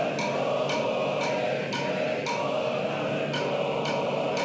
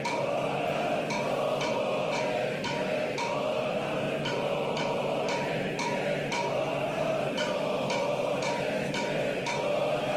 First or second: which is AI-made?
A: second